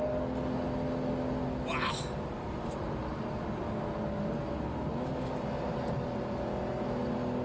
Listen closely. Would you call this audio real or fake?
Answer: real